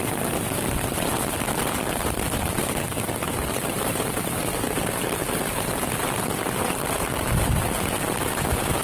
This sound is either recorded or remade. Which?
remade